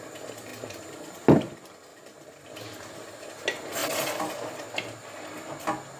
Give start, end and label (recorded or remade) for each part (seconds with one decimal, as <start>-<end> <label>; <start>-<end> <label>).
0.0-6.0 recorded